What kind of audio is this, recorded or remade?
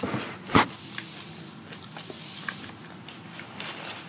recorded